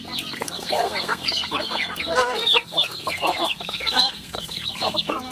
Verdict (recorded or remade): remade